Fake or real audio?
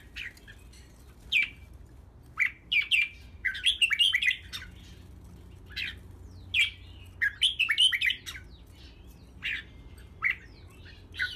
real